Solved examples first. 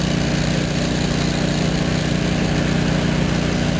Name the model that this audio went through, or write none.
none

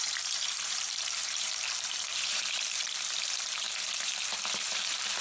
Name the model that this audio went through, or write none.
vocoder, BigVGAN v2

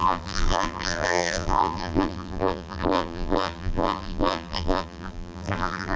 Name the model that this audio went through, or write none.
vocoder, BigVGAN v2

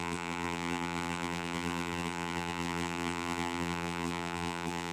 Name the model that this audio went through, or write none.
vocoder, BigVGAN v2